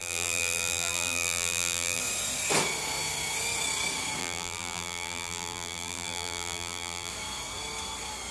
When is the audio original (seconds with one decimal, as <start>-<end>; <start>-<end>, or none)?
2.0-4.2; 7.1-8.3